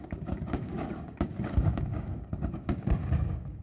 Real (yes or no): no